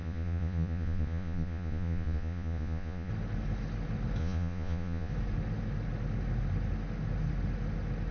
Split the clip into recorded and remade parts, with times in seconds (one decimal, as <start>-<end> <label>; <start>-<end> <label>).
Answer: 0.0-3.1 remade; 3.1-4.2 recorded; 4.2-5.1 remade; 5.1-8.1 recorded